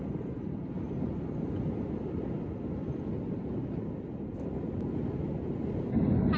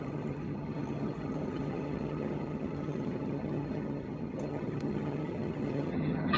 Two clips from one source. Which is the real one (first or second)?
first